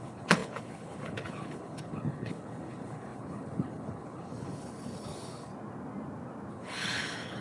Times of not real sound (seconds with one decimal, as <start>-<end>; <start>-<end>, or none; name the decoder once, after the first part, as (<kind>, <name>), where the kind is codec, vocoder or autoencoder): 0.0-5.5 (codec, HILCodec); 6.5-7.4